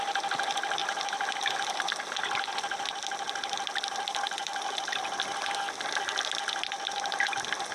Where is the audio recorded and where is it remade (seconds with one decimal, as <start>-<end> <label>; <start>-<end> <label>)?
0.0-7.7 recorded